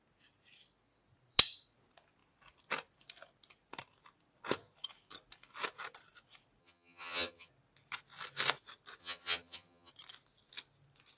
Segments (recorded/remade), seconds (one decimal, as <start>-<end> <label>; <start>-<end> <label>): 0.0-6.6 recorded; 6.6-7.5 remade; 7.5-9.0 recorded; 9.0-9.9 remade; 9.9-11.2 recorded